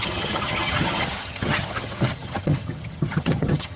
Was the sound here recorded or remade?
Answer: remade